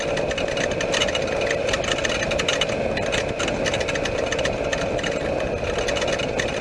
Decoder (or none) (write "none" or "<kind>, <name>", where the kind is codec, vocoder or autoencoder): none